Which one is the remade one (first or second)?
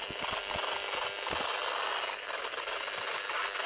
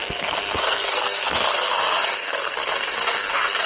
second